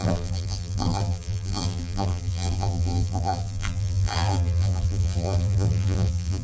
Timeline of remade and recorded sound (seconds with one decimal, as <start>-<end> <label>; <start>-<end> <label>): 0.0-6.4 remade